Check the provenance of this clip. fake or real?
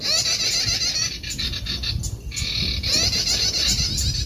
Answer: real